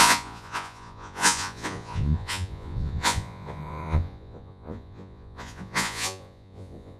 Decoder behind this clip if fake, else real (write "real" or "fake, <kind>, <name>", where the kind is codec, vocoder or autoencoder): fake, vocoder, Vocos